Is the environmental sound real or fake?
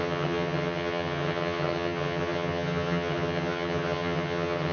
fake